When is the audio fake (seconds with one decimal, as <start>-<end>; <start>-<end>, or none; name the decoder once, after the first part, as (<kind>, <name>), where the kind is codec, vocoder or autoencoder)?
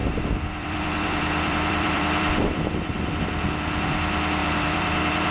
0.0-3.2 (vocoder, BigVGAN v2); 4.4-5.3